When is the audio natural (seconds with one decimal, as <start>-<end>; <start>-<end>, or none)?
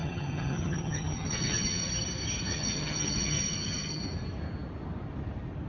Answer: 1.9-2.5; 4.0-5.7